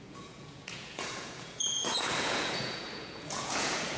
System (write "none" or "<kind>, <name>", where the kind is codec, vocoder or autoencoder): vocoder, Vocos